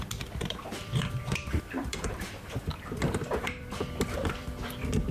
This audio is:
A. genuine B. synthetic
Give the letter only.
B